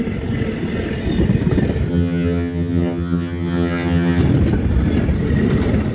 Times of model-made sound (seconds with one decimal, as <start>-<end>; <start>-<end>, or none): 1.9-4.2